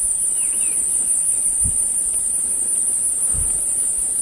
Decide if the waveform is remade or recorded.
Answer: recorded